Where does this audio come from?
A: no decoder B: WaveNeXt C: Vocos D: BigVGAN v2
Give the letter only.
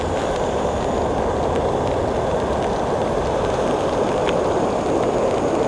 A